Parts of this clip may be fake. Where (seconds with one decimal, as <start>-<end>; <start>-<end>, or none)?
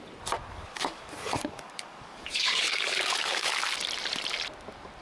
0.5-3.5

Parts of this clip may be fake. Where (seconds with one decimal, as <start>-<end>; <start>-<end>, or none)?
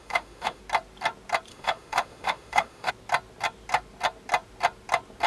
0.0-0.6; 1.5-2.9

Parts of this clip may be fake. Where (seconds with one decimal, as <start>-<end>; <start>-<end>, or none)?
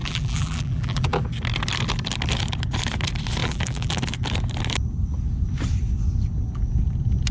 0.0-1.2; 3.4-4.0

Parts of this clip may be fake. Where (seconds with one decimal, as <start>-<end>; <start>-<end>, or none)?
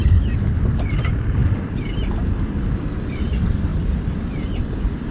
none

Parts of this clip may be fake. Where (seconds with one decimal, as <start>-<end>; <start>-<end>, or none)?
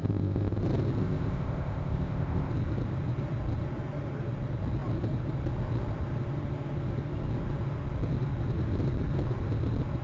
0.0-0.6; 1.0-2.5